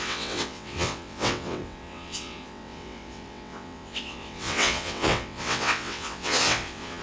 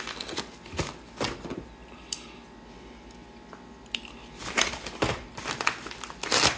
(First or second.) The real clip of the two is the second